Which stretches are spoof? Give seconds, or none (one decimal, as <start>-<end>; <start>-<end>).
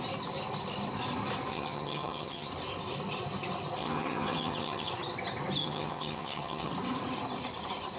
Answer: 1.5-2.5; 3.8-4.9; 5.6-6.7